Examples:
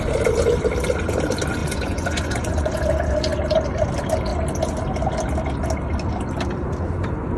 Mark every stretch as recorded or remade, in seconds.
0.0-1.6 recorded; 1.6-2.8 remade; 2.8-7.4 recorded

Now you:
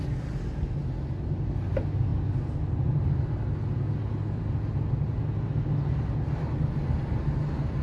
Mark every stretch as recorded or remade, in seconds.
0.0-7.8 recorded

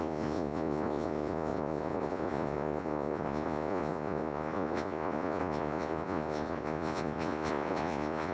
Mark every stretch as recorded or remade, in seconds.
0.0-8.3 remade

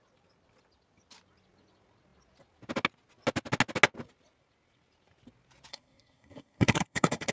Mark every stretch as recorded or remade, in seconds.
0.0-5.7 recorded; 5.7-7.3 remade

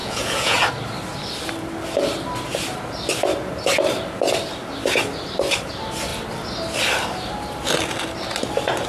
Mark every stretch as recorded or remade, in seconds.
0.0-0.6 remade; 0.6-8.9 recorded

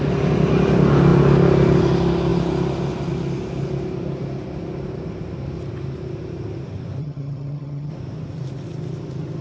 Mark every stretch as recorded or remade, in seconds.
0.0-7.0 recorded; 7.0-7.9 remade; 7.9-9.4 recorded

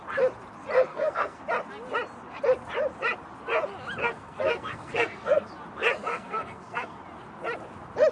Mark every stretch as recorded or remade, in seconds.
0.0-0.9 recorded; 0.9-1.4 remade; 1.4-4.0 recorded; 4.0-5.5 remade; 5.5-6.1 recorded; 6.1-7.0 remade; 7.0-8.1 recorded